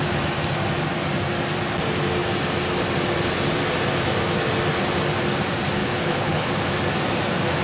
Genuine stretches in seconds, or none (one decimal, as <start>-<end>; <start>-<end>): 0.0-5.8; 6.5-7.6